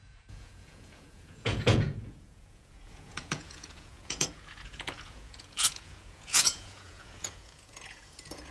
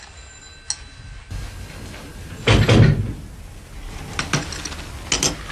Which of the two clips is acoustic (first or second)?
second